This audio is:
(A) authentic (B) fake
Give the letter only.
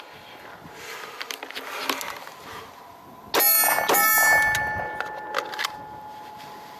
A